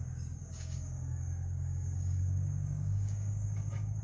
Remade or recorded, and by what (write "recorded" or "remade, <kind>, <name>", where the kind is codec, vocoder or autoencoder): remade, codec, DAC